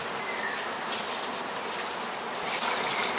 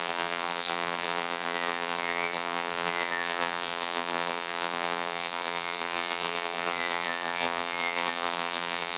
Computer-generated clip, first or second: second